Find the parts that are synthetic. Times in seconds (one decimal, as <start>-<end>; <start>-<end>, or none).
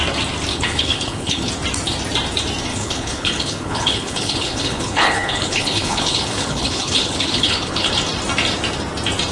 0.5-1.5; 2.7-7.9